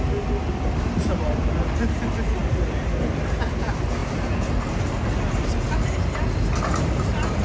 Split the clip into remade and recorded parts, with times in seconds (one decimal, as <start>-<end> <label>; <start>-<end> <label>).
0.0-7.4 recorded